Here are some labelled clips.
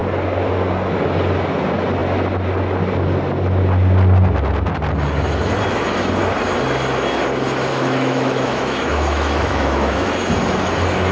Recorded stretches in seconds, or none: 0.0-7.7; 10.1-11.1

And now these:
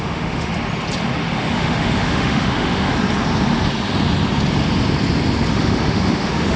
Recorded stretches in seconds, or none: 0.5-1.5; 2.9-5.5